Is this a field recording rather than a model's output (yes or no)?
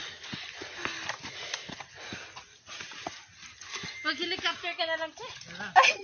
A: yes